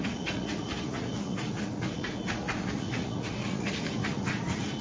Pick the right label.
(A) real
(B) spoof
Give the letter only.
B